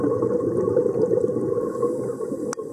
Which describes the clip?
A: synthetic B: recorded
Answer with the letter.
B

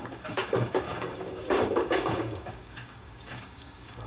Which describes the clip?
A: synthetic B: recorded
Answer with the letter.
A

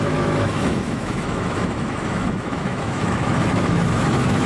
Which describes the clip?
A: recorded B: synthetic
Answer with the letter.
B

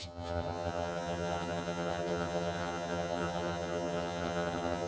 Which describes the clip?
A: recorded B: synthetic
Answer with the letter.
B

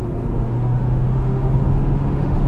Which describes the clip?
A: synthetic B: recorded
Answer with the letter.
A